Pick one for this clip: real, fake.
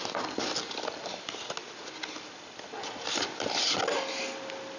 real